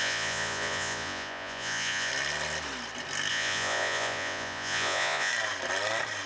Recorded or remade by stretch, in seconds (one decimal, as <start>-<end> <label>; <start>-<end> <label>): 0.0-2.1 remade; 2.1-3.3 recorded; 3.3-5.3 remade; 5.3-6.3 recorded